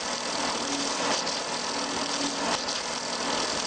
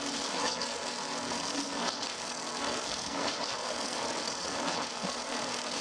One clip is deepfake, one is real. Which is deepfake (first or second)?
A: second